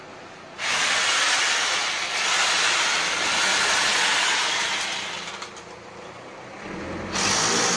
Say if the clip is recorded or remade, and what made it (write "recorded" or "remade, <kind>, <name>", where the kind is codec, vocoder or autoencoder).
recorded